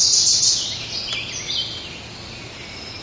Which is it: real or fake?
real